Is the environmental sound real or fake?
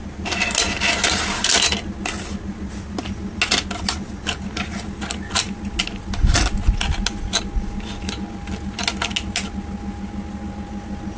real